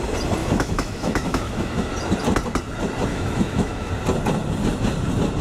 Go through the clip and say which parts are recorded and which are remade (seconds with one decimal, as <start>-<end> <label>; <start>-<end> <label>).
0.0-0.4 recorded; 0.4-1.9 remade; 1.9-3.1 recorded; 3.1-3.9 remade; 3.9-5.4 recorded